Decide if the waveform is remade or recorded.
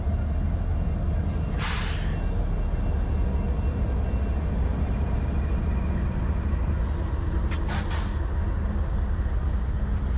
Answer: recorded